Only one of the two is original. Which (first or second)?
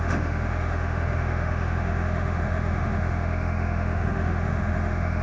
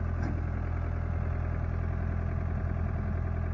second